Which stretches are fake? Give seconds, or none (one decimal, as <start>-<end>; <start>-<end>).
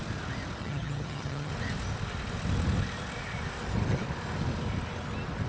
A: 0.6-1.5